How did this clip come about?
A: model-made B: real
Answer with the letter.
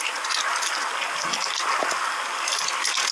B